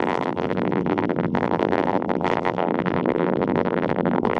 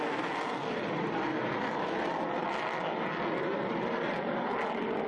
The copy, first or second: first